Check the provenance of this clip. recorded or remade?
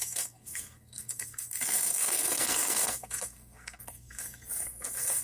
remade